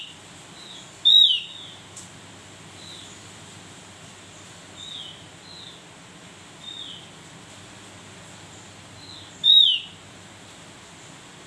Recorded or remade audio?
recorded